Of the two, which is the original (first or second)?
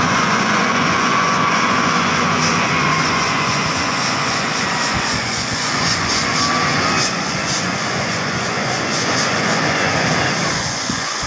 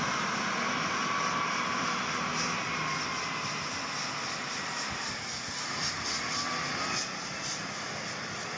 second